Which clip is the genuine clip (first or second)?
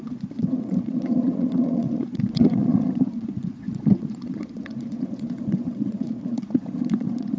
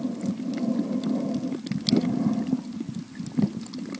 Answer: second